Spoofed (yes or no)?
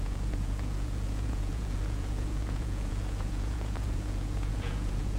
yes